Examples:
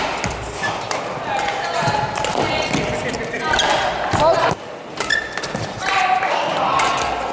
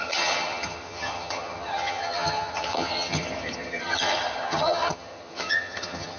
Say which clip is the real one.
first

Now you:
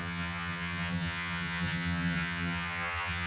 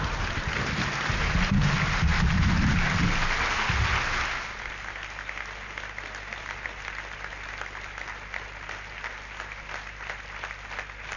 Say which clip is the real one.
second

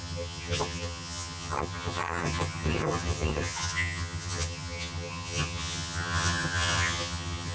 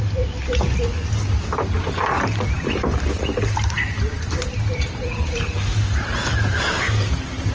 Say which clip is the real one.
second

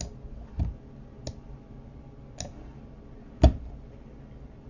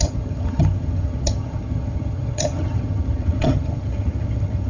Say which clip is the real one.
first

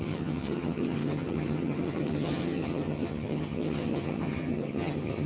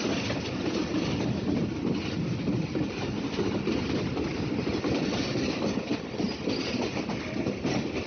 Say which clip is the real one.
second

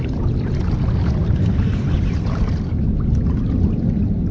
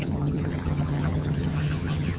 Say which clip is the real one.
first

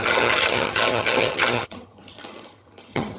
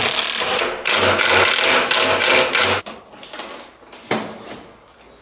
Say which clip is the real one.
second